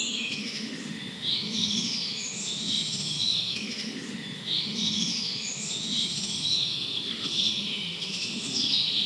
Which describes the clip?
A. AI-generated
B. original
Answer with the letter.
A